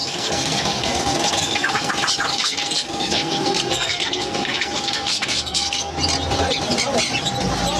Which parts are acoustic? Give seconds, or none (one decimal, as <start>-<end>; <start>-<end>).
1.9-2.3; 5.9-7.8